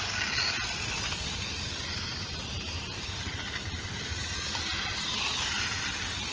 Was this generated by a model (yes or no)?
no